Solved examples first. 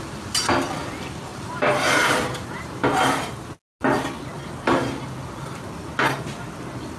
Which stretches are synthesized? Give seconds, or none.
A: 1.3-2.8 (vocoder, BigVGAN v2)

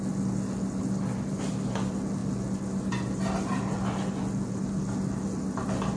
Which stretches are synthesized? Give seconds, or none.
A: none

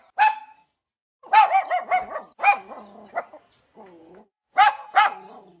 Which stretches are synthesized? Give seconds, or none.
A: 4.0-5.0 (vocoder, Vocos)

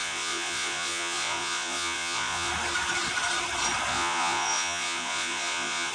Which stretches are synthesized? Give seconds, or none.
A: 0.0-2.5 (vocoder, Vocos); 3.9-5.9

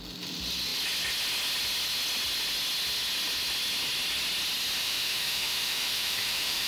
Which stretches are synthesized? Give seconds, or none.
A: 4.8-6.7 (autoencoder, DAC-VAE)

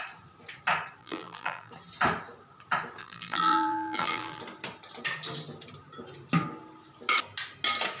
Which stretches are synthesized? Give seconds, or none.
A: 1.0-1.7 (vocoder, BigVGAN v2); 3.0-4.4